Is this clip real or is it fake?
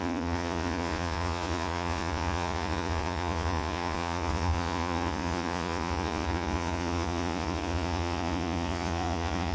fake